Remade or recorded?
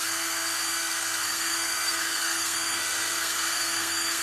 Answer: remade